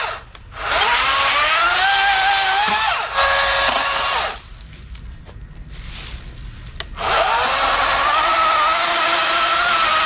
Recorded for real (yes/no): yes